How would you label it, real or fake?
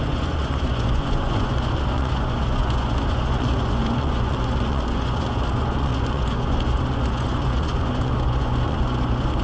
fake